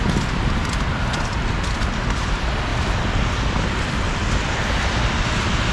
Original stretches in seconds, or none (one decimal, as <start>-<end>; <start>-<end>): 0.0-5.7